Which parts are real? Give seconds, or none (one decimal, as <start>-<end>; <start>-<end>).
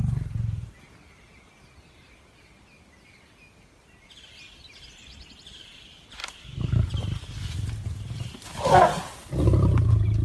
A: 0.0-6.2; 6.9-10.2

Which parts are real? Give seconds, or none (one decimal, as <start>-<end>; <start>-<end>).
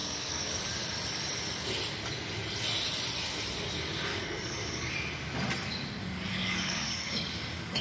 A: 0.5-4.1; 4.9-6.0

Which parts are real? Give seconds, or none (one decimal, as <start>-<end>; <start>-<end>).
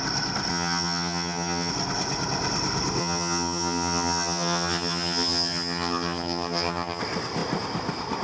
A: 0.0-0.5; 1.7-3.0; 7.0-8.2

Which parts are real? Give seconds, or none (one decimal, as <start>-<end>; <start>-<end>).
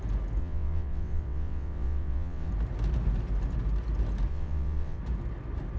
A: 0.0-0.4; 2.5-4.3; 5.0-5.8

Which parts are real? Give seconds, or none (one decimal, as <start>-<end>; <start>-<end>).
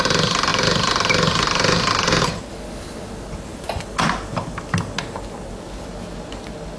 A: 0.0-6.8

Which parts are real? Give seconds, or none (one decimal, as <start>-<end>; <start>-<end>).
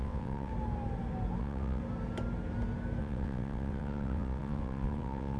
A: 0.5-1.4; 1.8-3.0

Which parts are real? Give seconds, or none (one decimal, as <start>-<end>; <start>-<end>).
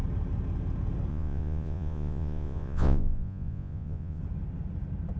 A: 0.0-1.1; 4.2-5.2